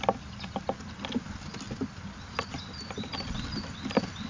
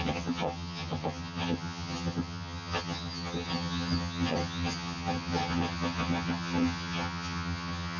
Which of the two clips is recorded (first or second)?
first